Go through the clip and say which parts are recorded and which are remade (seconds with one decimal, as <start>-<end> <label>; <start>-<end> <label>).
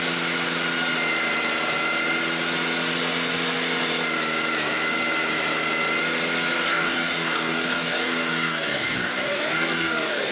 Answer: 0.0-6.6 recorded; 6.6-10.3 remade